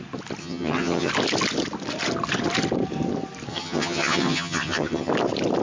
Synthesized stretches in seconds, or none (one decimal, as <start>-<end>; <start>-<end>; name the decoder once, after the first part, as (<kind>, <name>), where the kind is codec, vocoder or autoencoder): 0.4-1.1 (vocoder, HiFi-GAN); 3.5-5.1

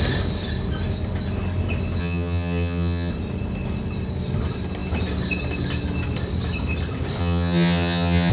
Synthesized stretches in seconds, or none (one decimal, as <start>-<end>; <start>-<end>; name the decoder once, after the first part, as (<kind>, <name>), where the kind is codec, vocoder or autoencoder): 2.0-3.1 (vocoder, HiFi-GAN); 7.2-8.3

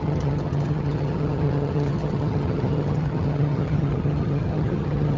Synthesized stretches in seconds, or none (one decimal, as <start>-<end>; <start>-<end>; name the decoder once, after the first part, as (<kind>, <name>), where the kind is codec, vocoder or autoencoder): 0.0-5.2 (vocoder, HiFi-GAN)

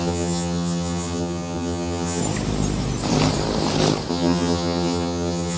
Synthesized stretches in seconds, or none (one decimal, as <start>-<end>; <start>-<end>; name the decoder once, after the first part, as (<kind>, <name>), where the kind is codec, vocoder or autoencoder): 0.0-2.2 (vocoder, HiFi-GAN); 4.1-5.6

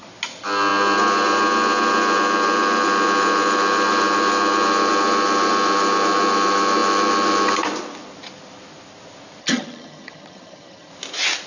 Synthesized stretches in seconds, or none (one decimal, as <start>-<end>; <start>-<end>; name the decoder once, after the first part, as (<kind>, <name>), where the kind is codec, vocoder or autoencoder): 9.4-10.9 (vocoder, HiFi-GAN)

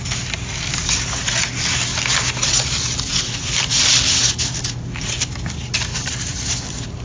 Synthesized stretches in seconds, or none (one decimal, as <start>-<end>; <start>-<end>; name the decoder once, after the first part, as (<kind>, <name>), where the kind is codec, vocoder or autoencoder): none

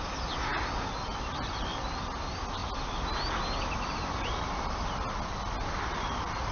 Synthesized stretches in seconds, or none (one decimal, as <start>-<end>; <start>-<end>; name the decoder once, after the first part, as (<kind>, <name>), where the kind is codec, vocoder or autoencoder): none